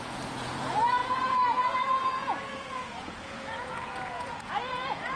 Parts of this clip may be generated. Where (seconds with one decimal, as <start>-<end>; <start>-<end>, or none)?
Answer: 0.0-5.2